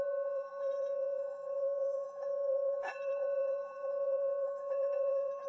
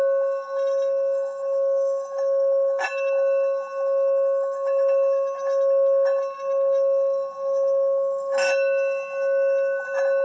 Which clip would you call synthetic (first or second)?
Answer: first